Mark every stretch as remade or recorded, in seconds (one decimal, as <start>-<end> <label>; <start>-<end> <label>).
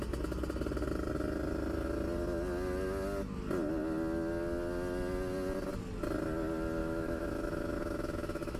0.0-6.8 recorded; 6.8-8.6 remade